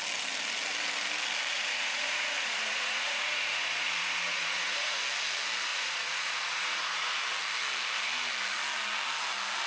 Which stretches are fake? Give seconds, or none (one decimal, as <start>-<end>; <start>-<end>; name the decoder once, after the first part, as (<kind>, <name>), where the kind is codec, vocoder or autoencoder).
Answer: 1.5-5.0 (vocoder, Vocos); 5.7-7.2